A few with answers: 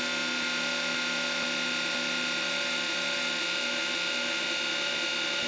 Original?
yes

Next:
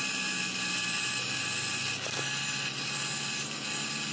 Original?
yes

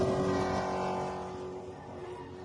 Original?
yes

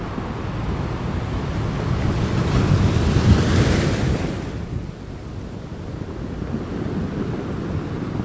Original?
yes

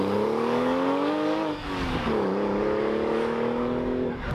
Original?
no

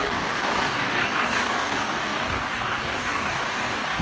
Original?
no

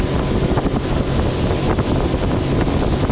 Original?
yes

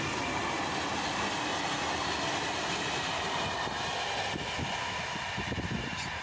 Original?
yes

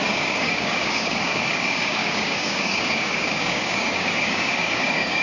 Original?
no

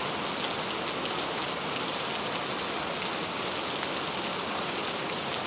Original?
yes